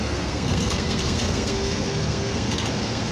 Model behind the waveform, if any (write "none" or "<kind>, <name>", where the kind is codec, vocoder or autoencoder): codec, SNAC